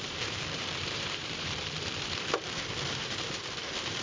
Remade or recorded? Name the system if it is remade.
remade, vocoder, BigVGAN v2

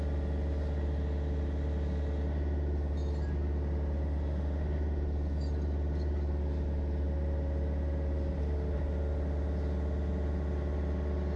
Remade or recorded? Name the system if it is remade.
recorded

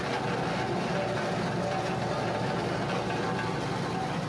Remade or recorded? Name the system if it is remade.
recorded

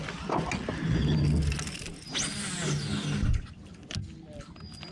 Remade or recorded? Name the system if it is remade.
recorded